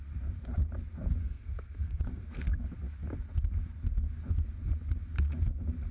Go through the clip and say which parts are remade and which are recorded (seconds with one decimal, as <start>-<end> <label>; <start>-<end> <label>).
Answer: 0.0-1.2 recorded; 1.2-2.4 remade; 2.4-5.9 recorded